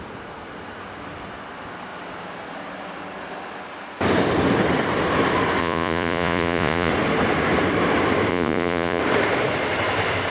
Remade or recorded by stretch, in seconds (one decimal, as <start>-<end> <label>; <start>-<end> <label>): 0.0-5.6 recorded; 5.6-6.9 remade; 6.9-8.3 recorded; 8.3-9.0 remade; 9.0-10.3 recorded